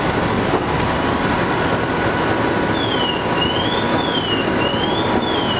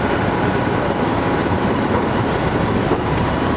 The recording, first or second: first